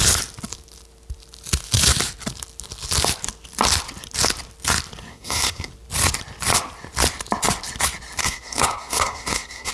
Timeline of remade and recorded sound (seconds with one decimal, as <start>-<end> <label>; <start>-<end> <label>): 0.0-5.1 recorded; 5.1-5.7 remade; 5.7-8.2 recorded; 8.2-9.7 remade